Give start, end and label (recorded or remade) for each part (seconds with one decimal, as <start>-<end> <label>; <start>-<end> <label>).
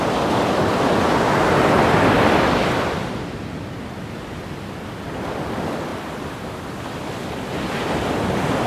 0.0-5.9 recorded; 5.9-7.5 remade; 7.5-8.7 recorded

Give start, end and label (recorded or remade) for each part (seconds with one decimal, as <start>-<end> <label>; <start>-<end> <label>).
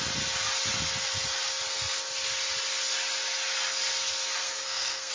0.0-4.4 recorded; 4.4-5.1 remade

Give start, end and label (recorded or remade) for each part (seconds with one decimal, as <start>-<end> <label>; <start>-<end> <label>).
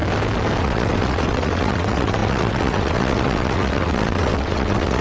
0.0-0.6 recorded; 0.6-5.0 remade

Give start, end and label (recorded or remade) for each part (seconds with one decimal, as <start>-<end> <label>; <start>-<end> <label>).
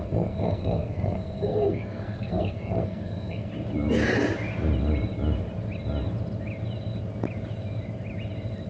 0.0-3.5 remade; 3.5-8.7 recorded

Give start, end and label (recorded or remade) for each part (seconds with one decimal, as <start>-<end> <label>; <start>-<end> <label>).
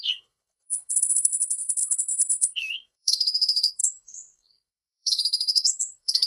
0.0-6.3 remade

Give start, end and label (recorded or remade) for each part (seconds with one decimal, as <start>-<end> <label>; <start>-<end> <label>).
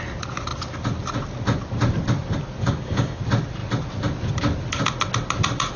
0.0-2.6 recorded; 2.6-3.2 remade; 3.2-5.8 recorded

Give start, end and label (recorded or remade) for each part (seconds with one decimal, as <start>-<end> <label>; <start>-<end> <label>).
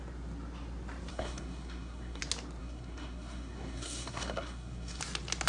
0.0-1.1 recorded; 1.1-2.2 remade; 2.2-2.6 recorded; 2.6-5.0 remade; 5.0-5.5 recorded